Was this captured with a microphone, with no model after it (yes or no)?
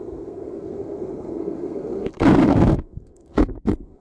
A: no